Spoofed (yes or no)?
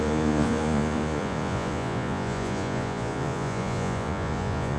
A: yes